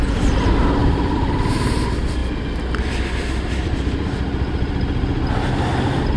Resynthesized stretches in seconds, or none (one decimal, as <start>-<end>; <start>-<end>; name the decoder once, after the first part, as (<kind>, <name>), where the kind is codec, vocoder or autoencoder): 0.8-1.5 (vocoder, BigVGAN v2)